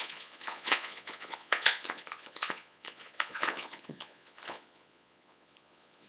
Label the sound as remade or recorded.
remade